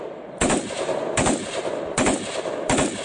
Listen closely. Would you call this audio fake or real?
real